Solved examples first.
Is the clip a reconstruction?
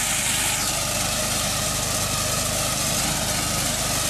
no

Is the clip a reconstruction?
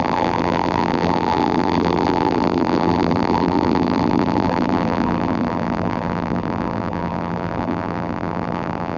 yes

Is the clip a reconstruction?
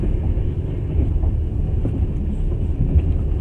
no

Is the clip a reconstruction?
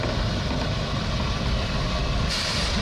no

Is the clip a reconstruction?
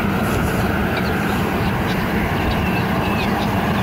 yes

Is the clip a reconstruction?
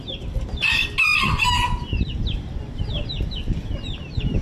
no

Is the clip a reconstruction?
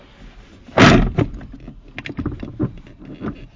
no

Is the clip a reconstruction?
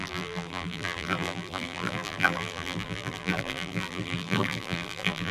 yes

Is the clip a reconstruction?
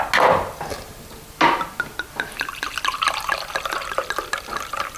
no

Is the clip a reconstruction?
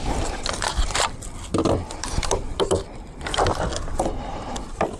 no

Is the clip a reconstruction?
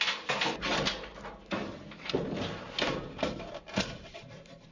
yes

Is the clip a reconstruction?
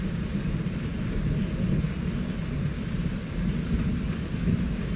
no